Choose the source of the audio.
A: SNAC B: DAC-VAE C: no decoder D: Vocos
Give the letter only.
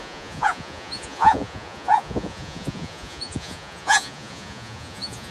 D